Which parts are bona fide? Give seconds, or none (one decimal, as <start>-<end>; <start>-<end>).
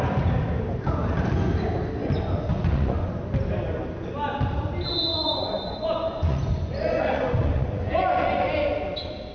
0.0-2.5; 3.1-5.1; 8.4-9.3